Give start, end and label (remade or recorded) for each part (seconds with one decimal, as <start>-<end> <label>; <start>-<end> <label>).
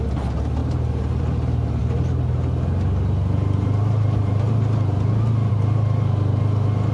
0.0-6.9 recorded